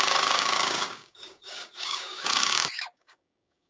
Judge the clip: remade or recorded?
remade